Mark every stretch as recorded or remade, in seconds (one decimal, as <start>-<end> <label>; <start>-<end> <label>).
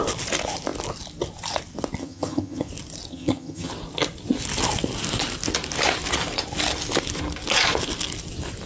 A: 0.0-2.0 recorded; 2.0-2.7 remade; 2.7-3.1 recorded; 3.1-3.7 remade; 3.7-8.7 recorded